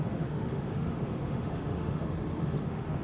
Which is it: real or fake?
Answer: fake